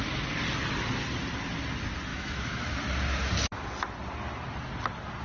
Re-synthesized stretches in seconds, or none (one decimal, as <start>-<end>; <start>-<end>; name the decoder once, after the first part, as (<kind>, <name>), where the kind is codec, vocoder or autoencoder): 2.1-2.7 (autoencoder, DAC-VAE)